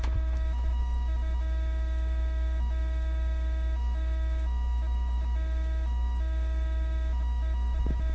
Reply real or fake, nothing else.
fake